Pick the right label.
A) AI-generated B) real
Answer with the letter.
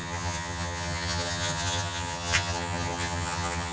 A